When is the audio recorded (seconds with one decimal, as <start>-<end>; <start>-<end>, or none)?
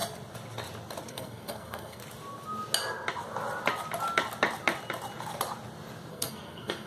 0.0-1.1; 2.0-6.1